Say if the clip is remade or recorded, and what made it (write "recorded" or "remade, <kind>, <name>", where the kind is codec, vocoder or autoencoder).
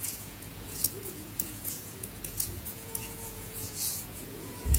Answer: remade, vocoder, Vocos